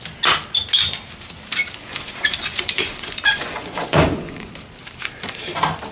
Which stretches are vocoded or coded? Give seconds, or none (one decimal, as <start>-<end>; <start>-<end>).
1.9-4.5